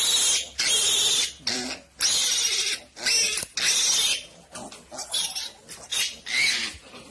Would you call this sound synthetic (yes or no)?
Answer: no